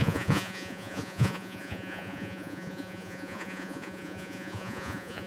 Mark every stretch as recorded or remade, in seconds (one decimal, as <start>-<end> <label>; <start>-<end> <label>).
0.0-5.3 remade